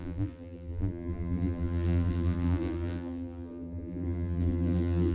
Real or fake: fake